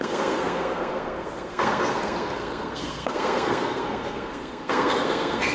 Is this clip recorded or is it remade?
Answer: remade